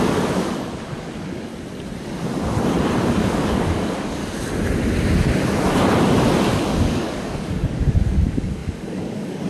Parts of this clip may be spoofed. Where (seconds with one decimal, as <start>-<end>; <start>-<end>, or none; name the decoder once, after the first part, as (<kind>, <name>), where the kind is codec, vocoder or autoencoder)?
0.0-1.5 (codec, DAC); 3.1-4.2; 6.5-9.5